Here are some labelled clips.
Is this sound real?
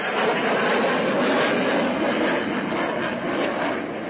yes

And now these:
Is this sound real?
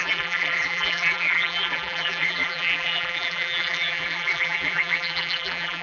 no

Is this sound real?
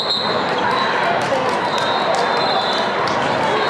yes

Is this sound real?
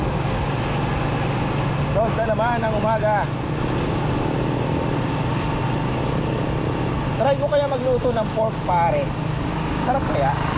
yes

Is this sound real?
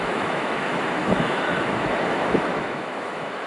no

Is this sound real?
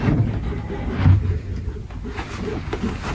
yes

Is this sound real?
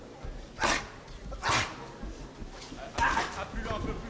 yes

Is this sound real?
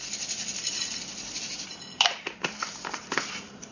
no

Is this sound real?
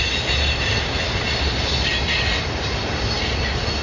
yes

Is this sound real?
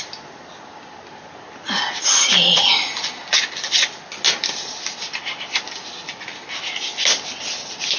yes